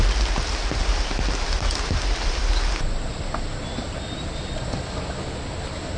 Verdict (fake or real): real